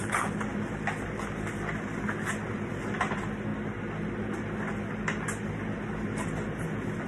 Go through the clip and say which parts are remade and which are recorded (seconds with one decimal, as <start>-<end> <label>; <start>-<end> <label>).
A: 0.0-7.1 recorded

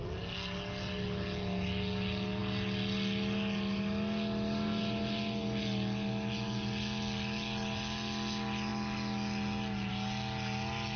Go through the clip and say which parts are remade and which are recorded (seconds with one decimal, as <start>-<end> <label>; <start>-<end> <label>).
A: 0.0-11.0 recorded

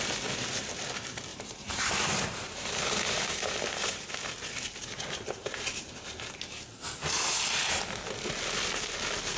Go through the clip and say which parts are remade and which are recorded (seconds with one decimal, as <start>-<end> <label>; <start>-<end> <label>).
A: 0.0-1.3 recorded; 1.3-4.1 remade; 4.1-9.4 recorded

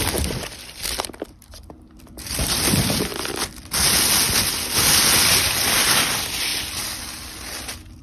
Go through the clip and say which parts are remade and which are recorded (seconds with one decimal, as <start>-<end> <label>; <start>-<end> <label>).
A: 0.0-3.1 remade; 3.1-5.8 recorded; 5.8-6.5 remade; 6.5-8.0 recorded

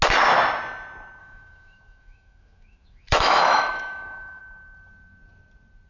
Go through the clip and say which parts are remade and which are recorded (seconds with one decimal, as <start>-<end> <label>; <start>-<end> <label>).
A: 0.0-1.2 recorded; 1.2-4.4 remade; 4.4-5.9 recorded

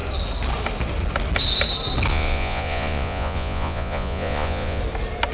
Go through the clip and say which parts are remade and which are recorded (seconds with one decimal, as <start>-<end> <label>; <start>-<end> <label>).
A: 0.0-2.1 recorded; 2.1-4.8 remade; 4.8-5.3 recorded